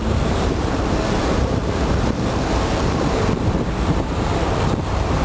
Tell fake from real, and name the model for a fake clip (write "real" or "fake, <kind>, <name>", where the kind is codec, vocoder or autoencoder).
fake, vocoder, BigVGAN v2